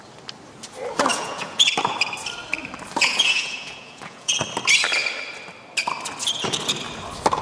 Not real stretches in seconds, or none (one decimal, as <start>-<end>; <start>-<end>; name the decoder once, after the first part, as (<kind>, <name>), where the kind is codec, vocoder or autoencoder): 1.1-1.7 (vocoder, Vocos); 3.0-4.4